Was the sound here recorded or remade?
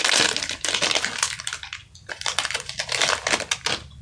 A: recorded